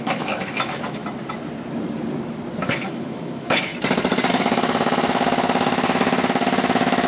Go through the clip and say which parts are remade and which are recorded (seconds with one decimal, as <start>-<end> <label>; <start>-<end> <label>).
0.0-1.0 remade; 1.0-2.7 recorded; 2.7-3.7 remade; 3.7-4.3 recorded; 4.3-7.1 remade